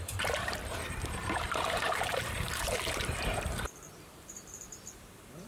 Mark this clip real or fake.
fake